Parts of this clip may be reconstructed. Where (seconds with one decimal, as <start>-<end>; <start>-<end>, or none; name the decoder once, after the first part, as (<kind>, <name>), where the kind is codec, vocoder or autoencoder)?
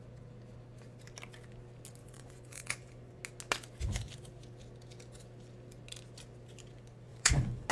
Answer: 2.0-3.2 (vocoder, Vocos); 7.1-7.7